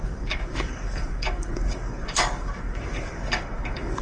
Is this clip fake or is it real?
fake